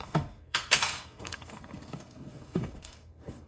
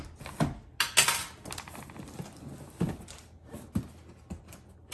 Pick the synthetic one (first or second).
first